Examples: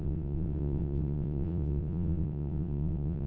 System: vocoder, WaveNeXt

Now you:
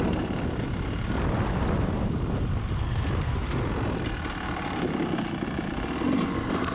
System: none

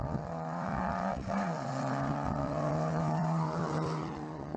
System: vocoder, WaveNeXt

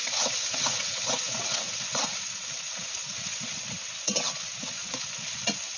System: vocoder, WaveNeXt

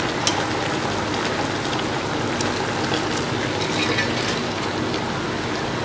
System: none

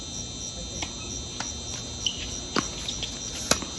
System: none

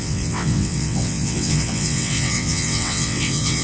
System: vocoder, WaveNeXt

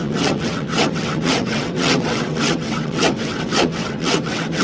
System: vocoder, WaveNeXt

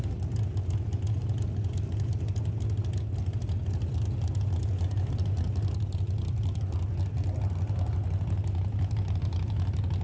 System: none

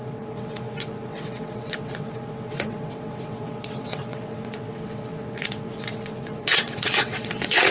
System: vocoder, WaveNeXt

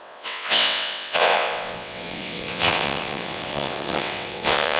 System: vocoder, WaveNeXt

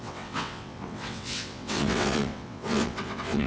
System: vocoder, WaveNeXt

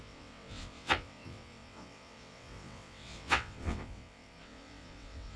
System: vocoder, WaveNeXt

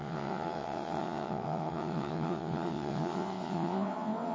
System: vocoder, WaveNeXt